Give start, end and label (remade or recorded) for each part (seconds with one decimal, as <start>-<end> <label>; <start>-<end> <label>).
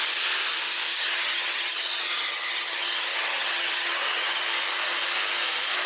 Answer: 0.0-0.9 recorded; 0.9-4.4 remade; 4.4-5.9 recorded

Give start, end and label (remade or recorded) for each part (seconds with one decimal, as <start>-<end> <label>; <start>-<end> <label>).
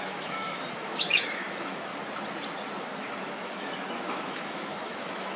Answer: 0.0-1.9 remade; 1.9-2.8 recorded; 2.8-5.4 remade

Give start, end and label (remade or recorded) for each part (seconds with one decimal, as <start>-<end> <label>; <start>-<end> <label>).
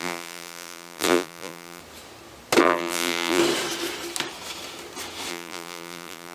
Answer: 0.0-1.8 remade; 1.8-2.6 recorded; 2.6-3.4 remade; 3.4-5.3 recorded; 5.3-6.3 remade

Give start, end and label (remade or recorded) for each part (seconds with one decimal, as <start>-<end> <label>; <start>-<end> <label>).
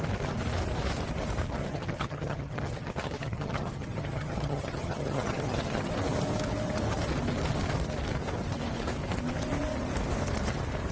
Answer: 0.0-1.6 recorded; 1.6-5.9 remade; 5.9-10.9 recorded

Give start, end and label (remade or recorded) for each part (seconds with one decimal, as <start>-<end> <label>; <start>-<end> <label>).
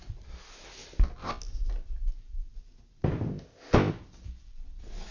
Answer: 0.0-3.3 recorded; 3.3-3.9 remade; 3.9-5.1 recorded